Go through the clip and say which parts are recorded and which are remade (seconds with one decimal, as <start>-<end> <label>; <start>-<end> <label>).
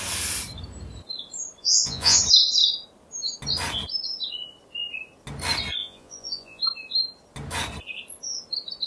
0.0-1.6 recorded; 1.6-2.2 remade; 2.2-5.8 recorded; 5.8-6.6 remade; 6.6-8.9 recorded